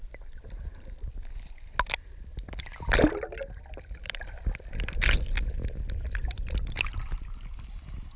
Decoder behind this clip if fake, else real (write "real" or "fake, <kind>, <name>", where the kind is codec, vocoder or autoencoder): real